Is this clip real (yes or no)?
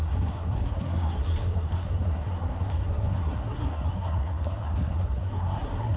no